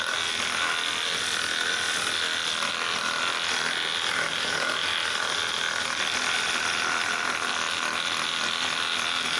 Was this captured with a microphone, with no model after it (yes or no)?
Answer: yes